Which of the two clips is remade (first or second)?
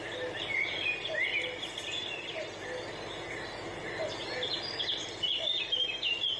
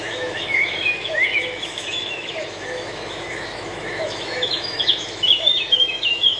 second